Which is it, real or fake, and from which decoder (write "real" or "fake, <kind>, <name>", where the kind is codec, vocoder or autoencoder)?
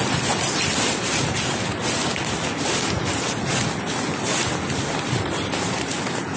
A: real